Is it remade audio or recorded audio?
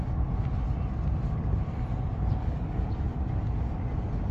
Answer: recorded